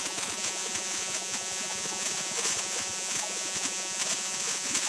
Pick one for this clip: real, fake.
fake